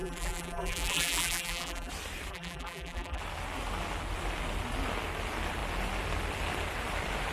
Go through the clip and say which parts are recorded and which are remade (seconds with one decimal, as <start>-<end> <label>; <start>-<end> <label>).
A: 0.0-1.9 remade; 1.9-2.3 recorded; 2.3-3.2 remade; 3.2-7.3 recorded